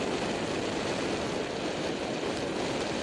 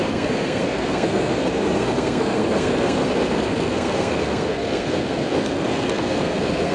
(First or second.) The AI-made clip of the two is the second